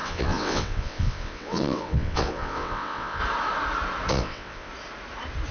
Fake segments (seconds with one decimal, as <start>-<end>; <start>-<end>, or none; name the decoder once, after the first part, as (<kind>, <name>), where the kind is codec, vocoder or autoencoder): 0.0-3.2 (vocoder, WaveNeXt); 4.1-4.7